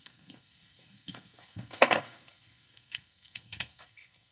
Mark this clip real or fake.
fake